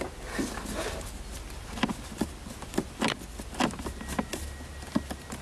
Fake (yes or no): no